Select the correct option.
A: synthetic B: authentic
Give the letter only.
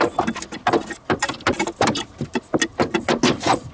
B